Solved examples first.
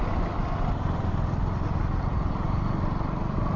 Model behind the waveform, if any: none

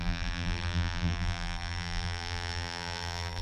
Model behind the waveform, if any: vocoder, BigVGAN v2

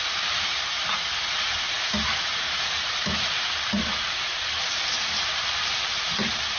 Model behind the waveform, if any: vocoder, BigVGAN v2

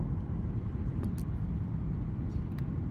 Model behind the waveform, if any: none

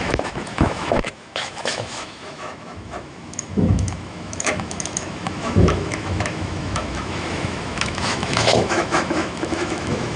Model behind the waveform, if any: autoencoder, DAC-VAE